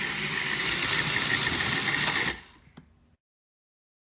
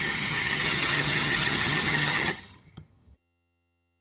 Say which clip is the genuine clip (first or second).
first